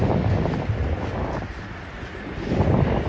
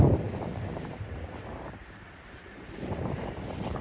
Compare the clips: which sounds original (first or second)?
first